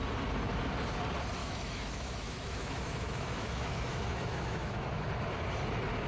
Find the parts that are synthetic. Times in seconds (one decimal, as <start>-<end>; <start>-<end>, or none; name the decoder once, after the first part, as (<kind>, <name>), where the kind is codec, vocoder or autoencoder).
1.4-5.1 (autoencoder, DAC-VAE)